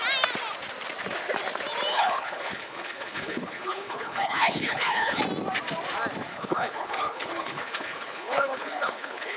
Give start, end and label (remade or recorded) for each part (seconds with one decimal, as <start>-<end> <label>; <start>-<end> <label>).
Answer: 0.0-1.9 recorded; 1.9-5.2 remade; 5.2-6.3 recorded; 6.3-9.4 remade

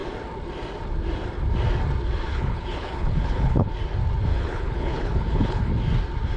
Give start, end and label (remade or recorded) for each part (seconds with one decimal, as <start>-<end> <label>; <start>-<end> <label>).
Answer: 0.0-2.3 recorded; 2.3-3.7 remade; 3.7-4.3 recorded; 4.3-5.7 remade; 5.7-6.4 recorded

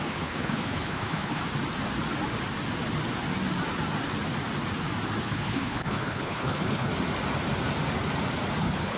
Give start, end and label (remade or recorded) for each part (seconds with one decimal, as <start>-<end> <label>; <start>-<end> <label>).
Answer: 0.0-1.4 remade; 1.4-5.2 recorded; 5.2-6.9 remade; 6.9-8.6 recorded; 8.6-9.0 remade

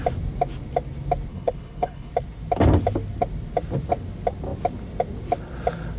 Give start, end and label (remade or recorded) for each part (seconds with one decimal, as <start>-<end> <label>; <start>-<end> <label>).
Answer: 0.0-1.3 recorded; 1.3-2.1 remade; 2.1-6.0 recorded

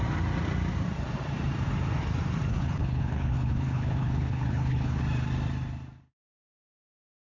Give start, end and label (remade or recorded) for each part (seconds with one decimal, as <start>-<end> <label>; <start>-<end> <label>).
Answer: 0.0-2.5 recorded; 2.5-5.0 remade; 5.0-7.3 recorded